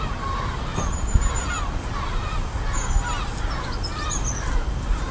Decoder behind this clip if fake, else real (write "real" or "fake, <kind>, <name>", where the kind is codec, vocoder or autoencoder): real